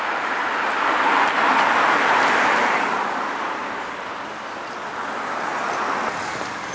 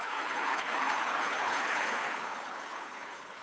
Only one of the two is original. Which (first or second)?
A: first